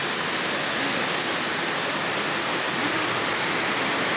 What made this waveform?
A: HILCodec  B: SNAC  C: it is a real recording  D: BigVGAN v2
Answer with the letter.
C